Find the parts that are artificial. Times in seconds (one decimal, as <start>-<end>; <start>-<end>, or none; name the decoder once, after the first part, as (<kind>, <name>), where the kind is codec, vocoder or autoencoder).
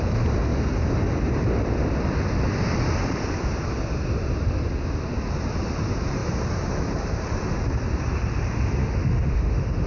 8.8-9.9 (autoencoder, DAC-VAE)